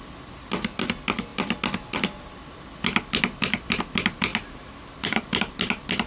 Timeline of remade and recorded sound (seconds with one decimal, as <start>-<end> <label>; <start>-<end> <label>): 0.0-6.1 recorded